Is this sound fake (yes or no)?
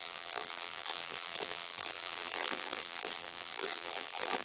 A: yes